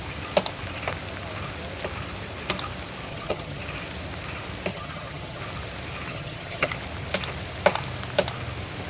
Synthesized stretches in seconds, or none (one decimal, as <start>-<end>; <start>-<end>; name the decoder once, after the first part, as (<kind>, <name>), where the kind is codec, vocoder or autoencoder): 3.1-3.6 (vocoder, HiFi-GAN); 4.7-5.4; 6.1-6.7